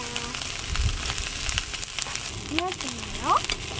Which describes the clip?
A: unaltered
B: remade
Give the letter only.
A